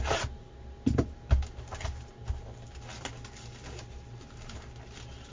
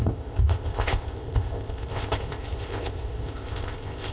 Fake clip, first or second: second